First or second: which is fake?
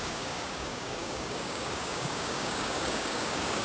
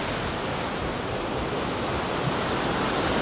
first